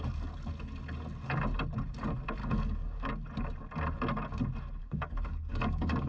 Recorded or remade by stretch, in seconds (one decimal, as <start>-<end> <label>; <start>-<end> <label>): 0.0-2.4 recorded; 2.4-3.1 remade; 3.1-4.8 recorded; 4.8-6.1 remade